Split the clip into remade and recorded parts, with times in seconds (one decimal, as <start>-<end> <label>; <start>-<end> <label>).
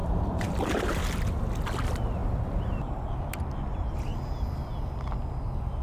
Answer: 0.0-1.0 remade; 1.0-2.2 recorded; 2.2-3.2 remade; 3.2-4.1 recorded; 4.1-4.9 remade; 4.9-5.8 recorded